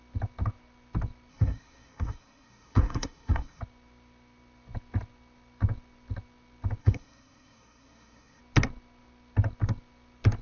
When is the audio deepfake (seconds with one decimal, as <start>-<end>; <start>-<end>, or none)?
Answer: 1.3-3.6; 6.8-8.4